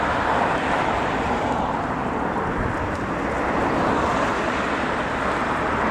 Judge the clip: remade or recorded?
remade